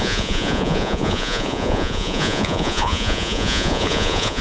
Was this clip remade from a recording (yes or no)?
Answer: yes